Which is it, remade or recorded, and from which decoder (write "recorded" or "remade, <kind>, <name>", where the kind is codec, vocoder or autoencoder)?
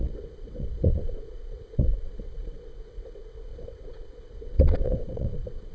remade, vocoder, WaveNeXt